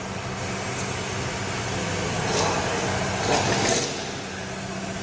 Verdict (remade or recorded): recorded